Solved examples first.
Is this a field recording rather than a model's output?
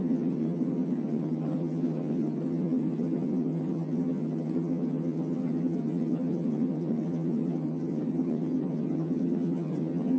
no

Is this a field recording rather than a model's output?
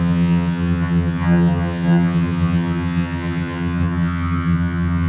no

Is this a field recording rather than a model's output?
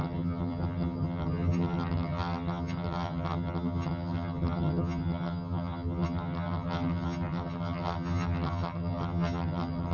no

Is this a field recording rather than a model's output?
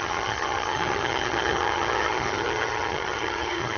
no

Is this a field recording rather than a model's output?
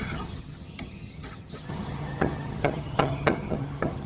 no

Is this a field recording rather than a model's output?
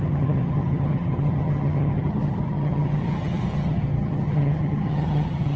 no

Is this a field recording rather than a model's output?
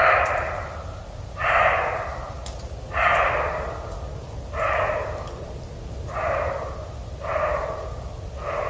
yes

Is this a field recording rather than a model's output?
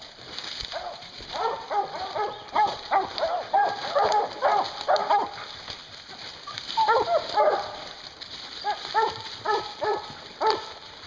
yes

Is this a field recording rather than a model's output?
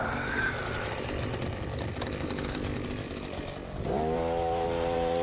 yes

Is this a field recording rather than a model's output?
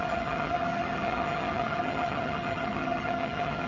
no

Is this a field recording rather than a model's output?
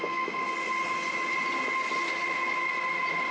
yes